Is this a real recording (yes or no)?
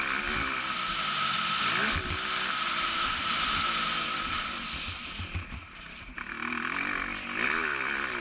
yes